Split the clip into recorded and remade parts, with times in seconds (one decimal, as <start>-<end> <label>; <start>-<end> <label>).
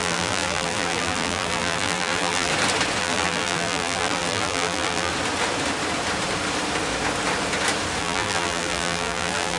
0.0-2.5 remade; 2.5-3.0 recorded; 3.0-5.1 remade; 5.1-8.0 recorded; 8.0-9.6 remade